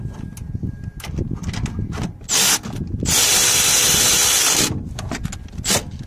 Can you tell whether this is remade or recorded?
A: recorded